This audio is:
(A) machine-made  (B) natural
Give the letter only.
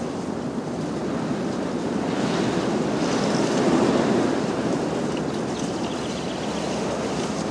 B